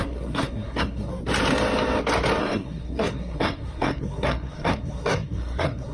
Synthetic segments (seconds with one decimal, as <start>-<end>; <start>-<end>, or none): 0.0-1.1; 2.4-5.9